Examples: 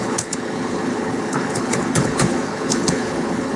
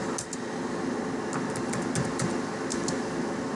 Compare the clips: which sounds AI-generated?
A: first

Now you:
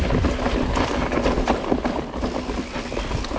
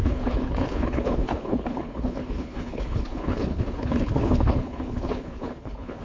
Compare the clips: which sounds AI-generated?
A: second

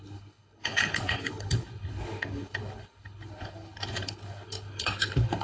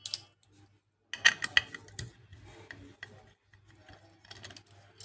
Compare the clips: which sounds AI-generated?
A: first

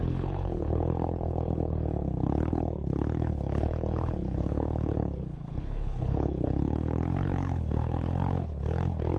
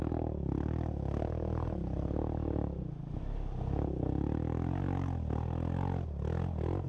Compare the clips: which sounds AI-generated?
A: first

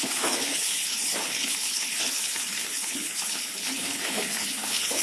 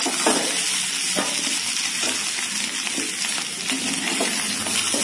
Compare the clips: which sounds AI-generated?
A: first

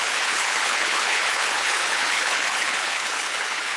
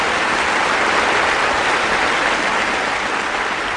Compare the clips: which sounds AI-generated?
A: first